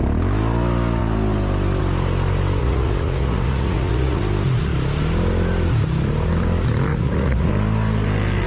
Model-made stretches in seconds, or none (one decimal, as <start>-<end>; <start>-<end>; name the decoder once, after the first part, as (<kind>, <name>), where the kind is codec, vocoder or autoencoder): 2.6-4.2 (vocoder, Vocos); 6.9-7.5